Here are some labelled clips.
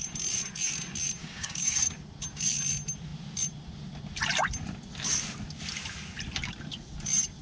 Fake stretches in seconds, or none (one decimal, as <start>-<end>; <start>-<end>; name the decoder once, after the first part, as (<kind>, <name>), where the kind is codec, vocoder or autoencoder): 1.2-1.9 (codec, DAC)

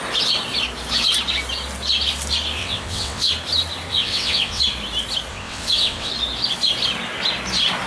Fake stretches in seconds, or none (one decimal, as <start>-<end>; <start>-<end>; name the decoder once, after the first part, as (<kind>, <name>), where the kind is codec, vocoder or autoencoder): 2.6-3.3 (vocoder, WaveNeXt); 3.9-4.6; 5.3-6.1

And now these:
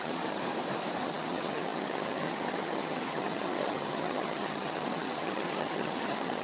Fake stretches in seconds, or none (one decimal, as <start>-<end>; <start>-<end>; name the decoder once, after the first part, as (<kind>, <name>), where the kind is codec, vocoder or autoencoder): 0.0-0.4 (vocoder, HiFi-GAN); 1.0-6.4

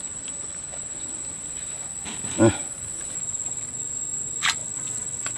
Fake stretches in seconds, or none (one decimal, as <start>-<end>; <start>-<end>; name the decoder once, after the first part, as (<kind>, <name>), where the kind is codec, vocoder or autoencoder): 4.6-5.4 (vocoder, WaveNeXt)

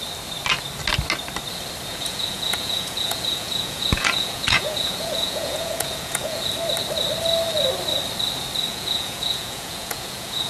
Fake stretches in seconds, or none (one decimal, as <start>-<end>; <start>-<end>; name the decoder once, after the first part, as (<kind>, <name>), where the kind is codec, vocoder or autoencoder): 1.9-6.5 (vocoder, Vocos); 8.7-10.5

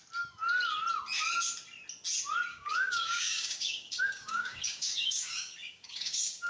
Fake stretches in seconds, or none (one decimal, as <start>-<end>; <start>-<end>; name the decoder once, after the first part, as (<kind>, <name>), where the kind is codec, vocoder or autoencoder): 2.5-6.5 (codec, DAC)